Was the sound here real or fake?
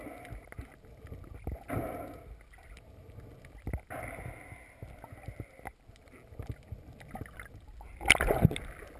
real